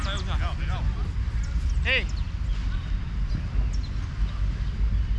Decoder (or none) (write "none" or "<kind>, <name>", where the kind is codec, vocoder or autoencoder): none